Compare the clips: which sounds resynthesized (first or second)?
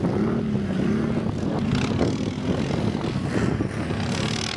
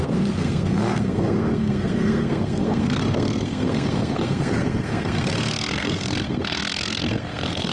second